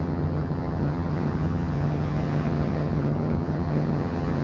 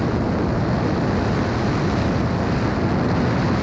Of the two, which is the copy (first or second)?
first